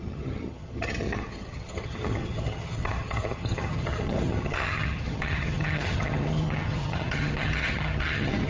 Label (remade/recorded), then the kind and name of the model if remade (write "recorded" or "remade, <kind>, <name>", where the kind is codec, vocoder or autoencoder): remade, vocoder, HiFi-GAN